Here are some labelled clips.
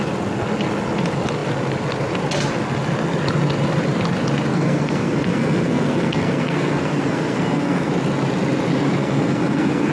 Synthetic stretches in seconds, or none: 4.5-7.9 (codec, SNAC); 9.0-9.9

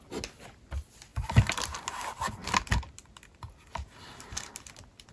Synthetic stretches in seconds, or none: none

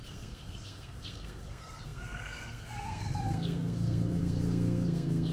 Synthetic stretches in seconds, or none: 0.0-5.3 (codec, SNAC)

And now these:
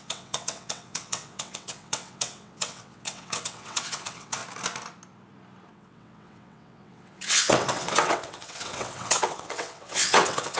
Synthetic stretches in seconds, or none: 0.0-4.4 (vocoder, WaveNeXt); 5.7-10.6

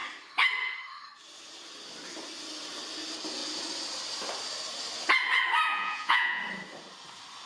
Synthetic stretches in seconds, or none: 5.7-6.4 (vocoder, Vocos)

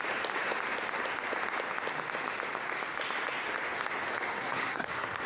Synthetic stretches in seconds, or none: 4.3-5.3 (codec, SNAC)

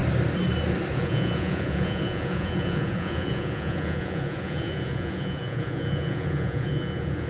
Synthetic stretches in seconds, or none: 0.9-7.3 (vocoder, Vocos)

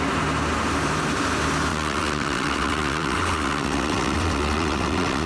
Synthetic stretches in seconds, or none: 1.7-5.3 (vocoder, WaveNeXt)